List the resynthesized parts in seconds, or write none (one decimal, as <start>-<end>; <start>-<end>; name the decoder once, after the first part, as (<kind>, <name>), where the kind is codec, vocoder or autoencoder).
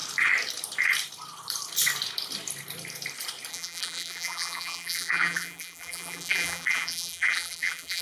3.5-8.0 (vocoder, BigVGAN v2)